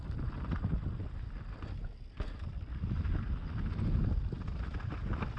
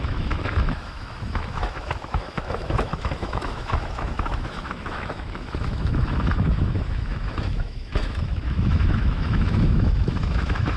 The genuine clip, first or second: first